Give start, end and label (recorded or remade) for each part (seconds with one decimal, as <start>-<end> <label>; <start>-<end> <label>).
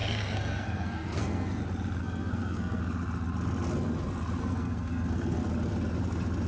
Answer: 0.0-1.6 remade; 1.6-2.0 recorded; 2.0-2.8 remade; 2.8-4.4 recorded; 4.4-5.4 remade; 5.4-6.5 recorded